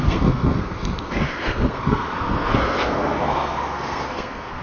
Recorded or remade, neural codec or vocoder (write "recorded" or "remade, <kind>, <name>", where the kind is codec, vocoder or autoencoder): remade, codec, SNAC